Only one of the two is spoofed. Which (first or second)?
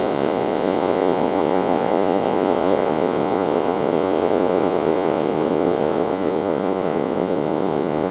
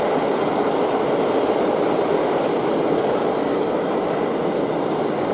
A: first